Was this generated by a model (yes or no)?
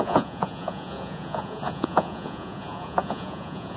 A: yes